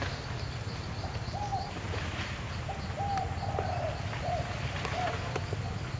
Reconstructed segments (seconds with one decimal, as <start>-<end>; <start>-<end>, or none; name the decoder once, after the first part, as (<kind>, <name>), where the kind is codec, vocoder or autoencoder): none